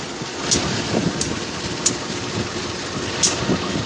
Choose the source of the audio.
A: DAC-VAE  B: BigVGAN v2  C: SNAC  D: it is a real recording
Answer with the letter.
D